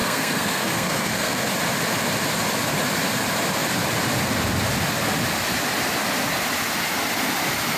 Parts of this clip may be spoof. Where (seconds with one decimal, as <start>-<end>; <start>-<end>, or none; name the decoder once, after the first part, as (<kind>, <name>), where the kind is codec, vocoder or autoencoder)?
0.0-1.5 (codec, SNAC)